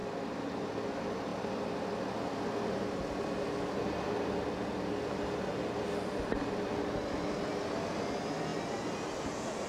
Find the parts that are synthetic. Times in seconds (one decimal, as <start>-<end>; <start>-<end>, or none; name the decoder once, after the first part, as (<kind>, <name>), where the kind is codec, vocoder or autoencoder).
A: none